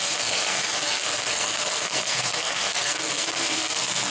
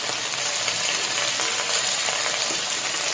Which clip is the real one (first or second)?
second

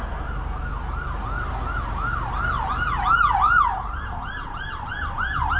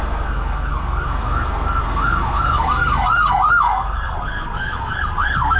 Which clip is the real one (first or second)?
first